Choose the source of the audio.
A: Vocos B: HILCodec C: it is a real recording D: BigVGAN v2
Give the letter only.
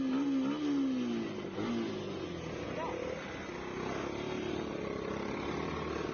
C